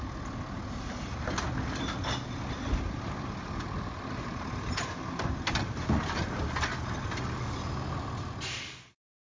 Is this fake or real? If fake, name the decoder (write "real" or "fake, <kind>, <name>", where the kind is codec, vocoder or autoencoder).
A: real